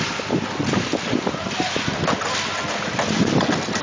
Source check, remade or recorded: recorded